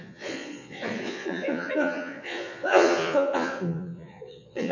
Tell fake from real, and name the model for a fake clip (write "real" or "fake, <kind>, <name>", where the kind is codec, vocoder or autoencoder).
fake, vocoder, Vocos